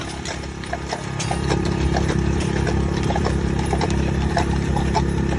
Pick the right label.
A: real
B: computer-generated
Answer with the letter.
B